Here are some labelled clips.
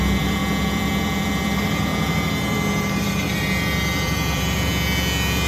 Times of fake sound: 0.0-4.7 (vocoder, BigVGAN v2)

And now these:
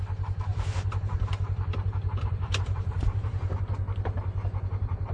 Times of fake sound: 0.5-3.6 (vocoder, BigVGAN v2)

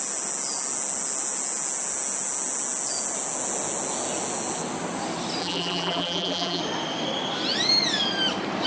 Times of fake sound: 5.4-6.6 (vocoder, BigVGAN v2)

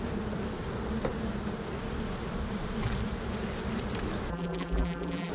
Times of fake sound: 4.3-5.3 (vocoder, BigVGAN v2)

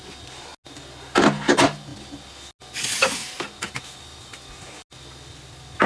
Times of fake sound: none

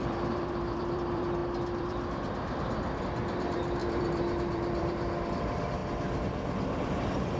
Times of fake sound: 0.0-5.8 (vocoder, BigVGAN v2)

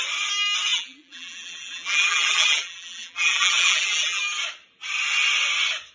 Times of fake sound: 0.7-4.2 (vocoder, BigVGAN v2)